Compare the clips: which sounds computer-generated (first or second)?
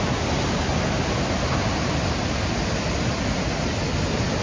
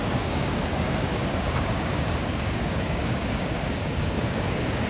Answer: second